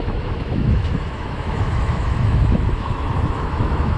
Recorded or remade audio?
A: remade